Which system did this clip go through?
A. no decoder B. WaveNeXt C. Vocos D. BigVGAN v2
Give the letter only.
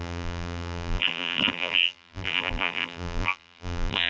D